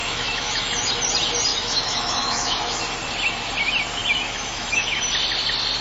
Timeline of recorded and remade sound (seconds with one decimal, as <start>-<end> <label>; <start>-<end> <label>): 0.0-0.9 remade; 0.9-1.5 recorded; 1.5-2.8 remade; 2.8-4.0 recorded; 4.0-5.0 remade; 5.0-5.8 recorded